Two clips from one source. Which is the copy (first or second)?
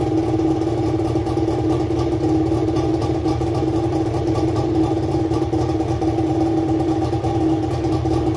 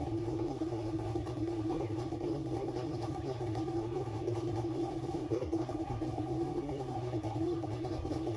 second